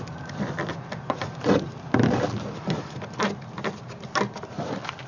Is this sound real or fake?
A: real